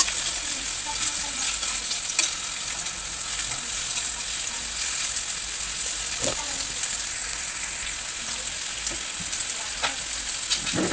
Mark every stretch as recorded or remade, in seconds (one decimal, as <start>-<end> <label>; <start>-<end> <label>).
0.0-10.9 recorded